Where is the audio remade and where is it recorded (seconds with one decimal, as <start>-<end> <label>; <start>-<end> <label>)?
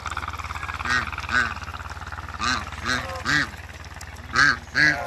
0.0-5.1 recorded